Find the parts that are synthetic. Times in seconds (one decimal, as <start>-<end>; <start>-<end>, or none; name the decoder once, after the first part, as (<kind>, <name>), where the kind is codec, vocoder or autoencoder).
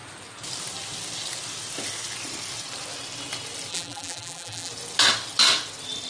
3.7-4.7 (vocoder, BigVGAN v2)